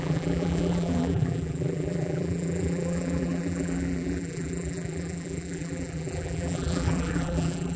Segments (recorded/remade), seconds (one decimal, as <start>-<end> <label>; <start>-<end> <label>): 0.0-7.8 remade

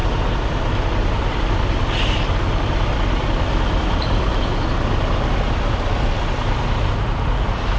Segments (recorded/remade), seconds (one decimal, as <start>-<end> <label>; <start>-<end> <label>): 0.0-4.3 remade; 4.3-6.1 recorded; 6.1-7.8 remade

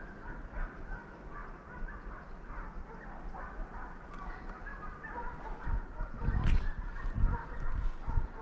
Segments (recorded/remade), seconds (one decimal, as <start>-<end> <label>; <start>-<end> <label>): 0.0-4.7 recorded; 4.7-5.8 remade; 5.8-8.4 recorded

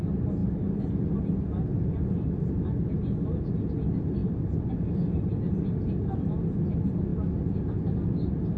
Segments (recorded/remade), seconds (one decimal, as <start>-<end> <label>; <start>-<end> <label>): 0.0-4.2 recorded; 4.2-4.7 remade; 4.7-8.6 recorded

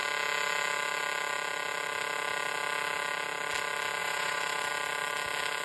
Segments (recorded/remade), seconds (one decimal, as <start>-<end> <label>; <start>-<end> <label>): 0.0-4.0 recorded; 4.0-4.7 remade; 4.7-5.6 recorded

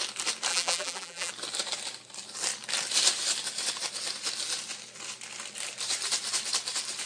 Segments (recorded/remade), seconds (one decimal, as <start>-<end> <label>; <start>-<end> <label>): 0.0-0.5 recorded; 0.5-1.3 remade; 1.3-7.1 recorded